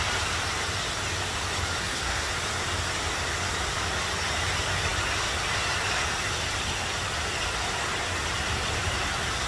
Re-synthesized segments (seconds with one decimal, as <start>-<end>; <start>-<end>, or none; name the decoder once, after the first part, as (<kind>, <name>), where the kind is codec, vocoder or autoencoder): 1.8-2.3 (codec, SNAC)